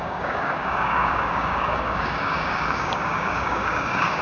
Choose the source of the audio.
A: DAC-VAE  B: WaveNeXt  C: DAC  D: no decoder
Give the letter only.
C